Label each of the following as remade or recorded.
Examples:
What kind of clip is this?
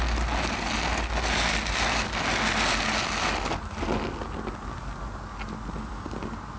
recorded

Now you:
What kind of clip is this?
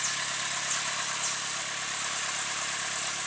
recorded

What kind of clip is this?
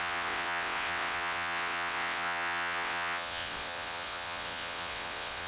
remade